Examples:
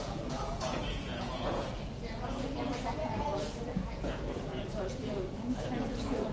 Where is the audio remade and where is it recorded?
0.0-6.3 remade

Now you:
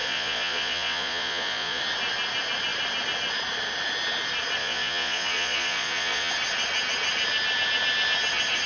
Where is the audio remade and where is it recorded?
0.0-1.8 remade; 1.8-4.6 recorded; 4.6-6.3 remade; 6.3-8.7 recorded

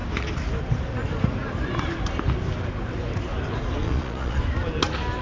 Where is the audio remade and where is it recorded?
0.0-3.8 recorded; 3.8-4.4 remade; 4.4-5.2 recorded

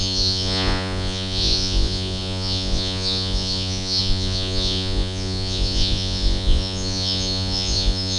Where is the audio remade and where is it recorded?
0.0-8.2 remade